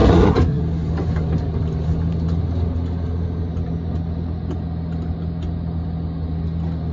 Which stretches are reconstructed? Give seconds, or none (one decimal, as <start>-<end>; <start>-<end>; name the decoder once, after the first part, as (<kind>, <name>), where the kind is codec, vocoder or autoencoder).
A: 0.0-0.6 (codec, SNAC)